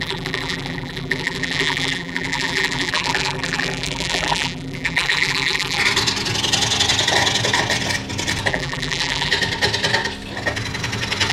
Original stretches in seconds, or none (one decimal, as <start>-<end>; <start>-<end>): 5.8-8.5; 9.3-11.3